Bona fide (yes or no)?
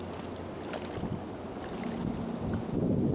yes